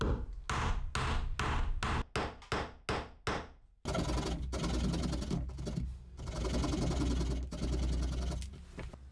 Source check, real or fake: real